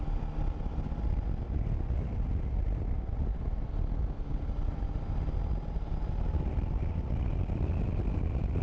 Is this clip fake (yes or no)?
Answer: no